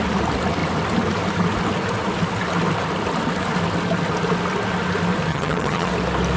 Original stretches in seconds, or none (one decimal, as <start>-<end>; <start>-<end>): 0.0-5.3; 5.9-6.4